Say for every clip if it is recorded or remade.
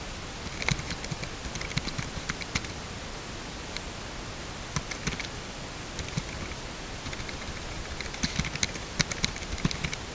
recorded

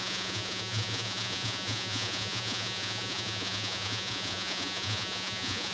remade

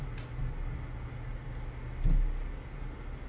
recorded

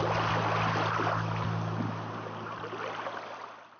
recorded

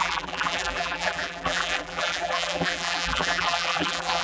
remade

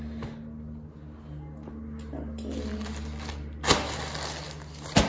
recorded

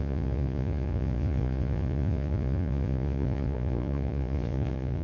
remade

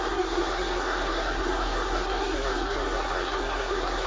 remade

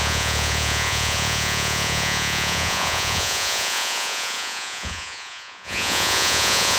remade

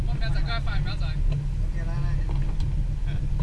recorded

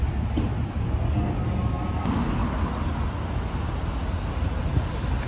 recorded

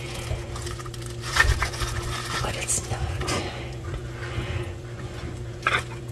remade